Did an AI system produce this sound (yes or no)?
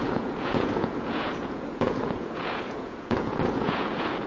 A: yes